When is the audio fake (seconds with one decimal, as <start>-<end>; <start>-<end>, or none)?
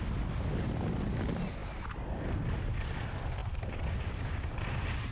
none